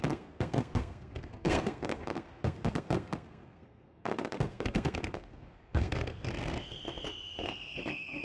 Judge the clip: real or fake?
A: fake